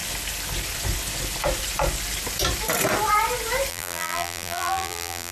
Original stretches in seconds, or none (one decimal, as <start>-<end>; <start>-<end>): 0.0-3.7